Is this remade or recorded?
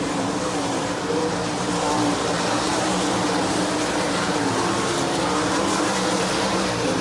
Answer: remade